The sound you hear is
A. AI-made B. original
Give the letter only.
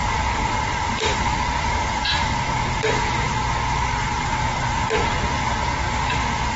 B